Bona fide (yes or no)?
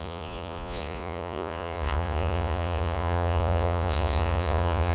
no